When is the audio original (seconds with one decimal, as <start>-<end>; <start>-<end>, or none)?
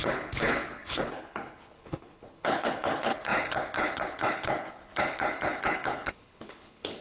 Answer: none